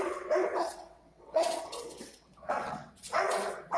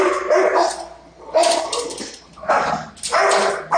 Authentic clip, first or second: second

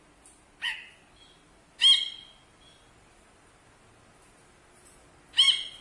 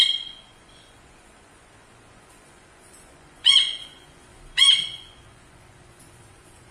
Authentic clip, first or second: first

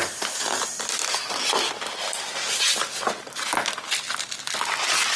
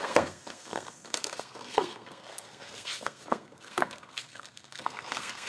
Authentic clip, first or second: first